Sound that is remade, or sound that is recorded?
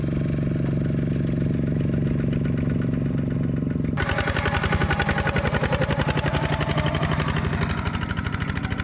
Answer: recorded